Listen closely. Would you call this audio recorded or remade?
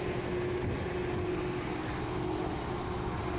recorded